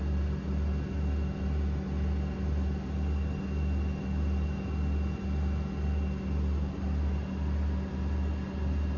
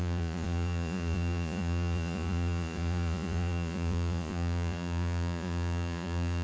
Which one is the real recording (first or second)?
first